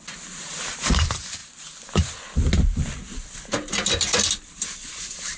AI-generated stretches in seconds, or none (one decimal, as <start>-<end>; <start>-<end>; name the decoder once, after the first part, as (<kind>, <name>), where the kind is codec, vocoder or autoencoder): none